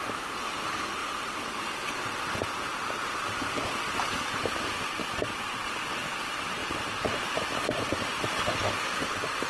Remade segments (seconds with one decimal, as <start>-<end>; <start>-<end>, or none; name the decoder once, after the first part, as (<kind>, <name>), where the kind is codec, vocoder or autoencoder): 1.0-2.0 (vocoder, BigVGAN v2); 2.7-6.1